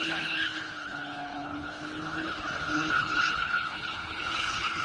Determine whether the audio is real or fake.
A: fake